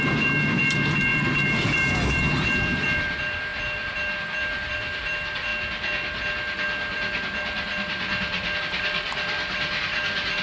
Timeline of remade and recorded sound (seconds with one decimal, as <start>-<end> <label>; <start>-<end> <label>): 0.0-5.5 remade; 5.5-8.6 recorded; 8.6-10.4 remade